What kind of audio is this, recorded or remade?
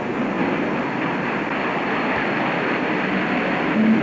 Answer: recorded